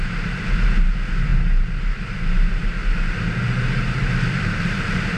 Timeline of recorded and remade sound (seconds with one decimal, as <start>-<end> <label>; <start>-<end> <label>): 0.0-5.2 recorded